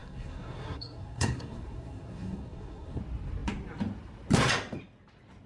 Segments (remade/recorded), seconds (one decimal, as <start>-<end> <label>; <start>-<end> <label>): 0.0-3.0 remade; 3.0-5.5 recorded